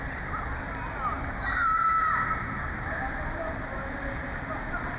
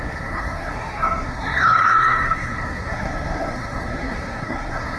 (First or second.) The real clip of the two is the first